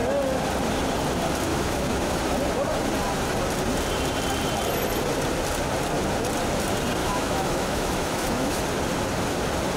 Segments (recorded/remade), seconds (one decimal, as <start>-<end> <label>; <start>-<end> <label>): 0.0-1.5 recorded; 1.5-2.2 remade; 2.2-7.0 recorded; 7.0-8.6 remade; 8.6-9.8 recorded